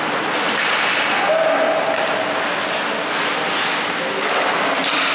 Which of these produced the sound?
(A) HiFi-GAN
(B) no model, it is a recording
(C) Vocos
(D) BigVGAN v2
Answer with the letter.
B